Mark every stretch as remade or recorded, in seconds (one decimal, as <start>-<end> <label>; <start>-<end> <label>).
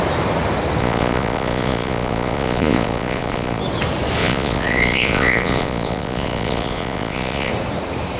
0.0-0.8 recorded; 0.8-3.6 remade; 3.6-4.2 recorded; 4.2-7.5 remade; 7.5-8.2 recorded